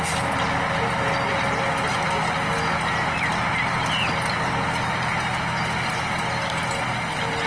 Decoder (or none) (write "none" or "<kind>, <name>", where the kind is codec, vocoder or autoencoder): none